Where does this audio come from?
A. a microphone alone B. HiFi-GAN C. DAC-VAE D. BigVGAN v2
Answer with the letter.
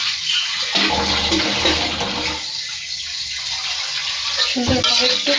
A